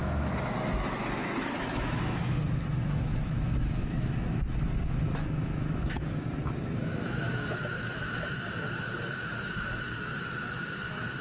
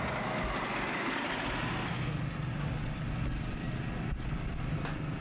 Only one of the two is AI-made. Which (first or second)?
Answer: first